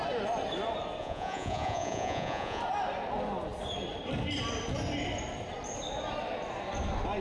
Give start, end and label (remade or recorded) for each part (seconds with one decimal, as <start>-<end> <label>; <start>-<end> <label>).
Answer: 0.0-1.0 recorded; 1.0-2.6 remade; 2.6-7.2 recorded